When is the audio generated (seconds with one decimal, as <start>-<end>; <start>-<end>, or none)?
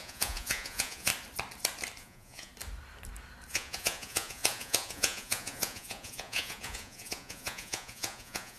0.0-1.1; 2.0-2.5; 3.5-8.6